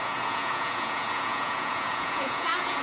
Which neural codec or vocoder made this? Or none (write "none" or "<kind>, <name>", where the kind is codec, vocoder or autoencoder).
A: vocoder, Vocos